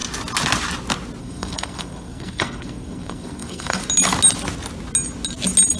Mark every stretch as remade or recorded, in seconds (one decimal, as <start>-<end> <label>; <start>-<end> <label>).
0.0-1.2 recorded; 1.2-3.8 remade; 3.8-5.8 recorded